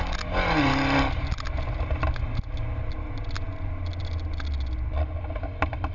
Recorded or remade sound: recorded